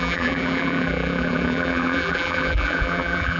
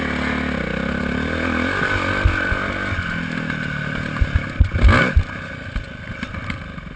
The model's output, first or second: first